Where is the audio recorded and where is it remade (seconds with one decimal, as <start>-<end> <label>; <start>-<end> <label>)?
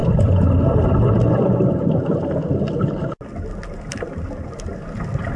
0.0-5.4 recorded